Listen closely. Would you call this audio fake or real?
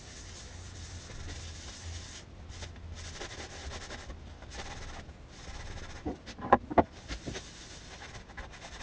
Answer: real